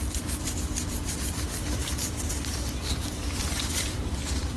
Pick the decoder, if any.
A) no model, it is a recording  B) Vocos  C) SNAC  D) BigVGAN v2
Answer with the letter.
D